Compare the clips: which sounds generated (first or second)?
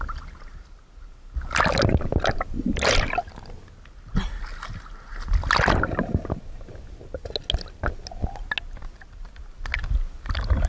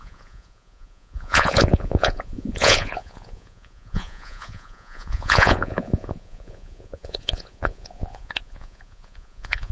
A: second